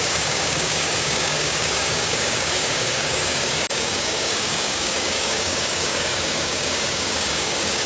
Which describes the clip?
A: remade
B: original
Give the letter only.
A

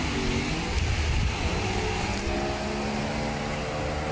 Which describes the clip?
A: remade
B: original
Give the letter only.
B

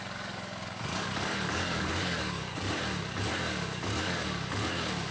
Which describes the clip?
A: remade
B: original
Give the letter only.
A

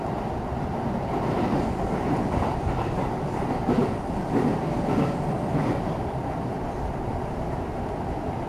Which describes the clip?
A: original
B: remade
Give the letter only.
A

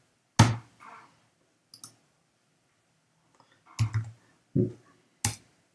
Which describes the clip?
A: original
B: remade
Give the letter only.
A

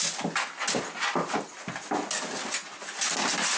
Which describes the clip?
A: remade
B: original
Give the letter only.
B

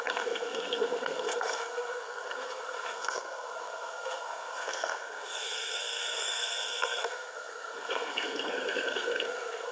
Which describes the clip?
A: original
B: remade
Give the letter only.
B